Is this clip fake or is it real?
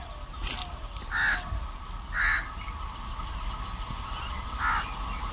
real